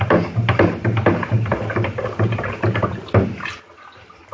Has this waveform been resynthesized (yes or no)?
no